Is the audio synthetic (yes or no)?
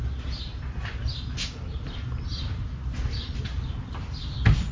no